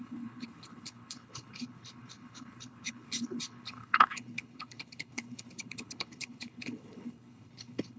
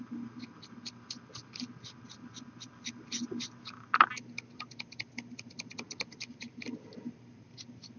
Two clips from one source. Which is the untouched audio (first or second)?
second